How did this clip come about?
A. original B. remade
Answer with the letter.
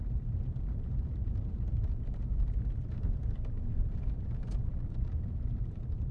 B